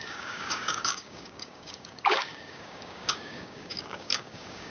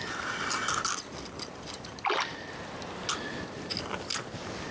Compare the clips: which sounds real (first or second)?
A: second